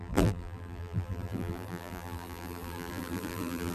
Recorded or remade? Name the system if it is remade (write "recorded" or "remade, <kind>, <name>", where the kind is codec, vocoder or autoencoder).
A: remade, vocoder, BigVGAN v2